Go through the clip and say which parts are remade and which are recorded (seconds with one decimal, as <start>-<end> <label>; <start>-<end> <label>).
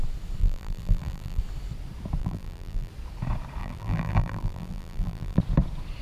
0.0-0.4 recorded; 0.4-1.4 remade; 1.4-2.2 recorded; 2.2-2.9 remade; 2.9-3.6 recorded; 3.6-5.4 remade; 5.4-6.0 recorded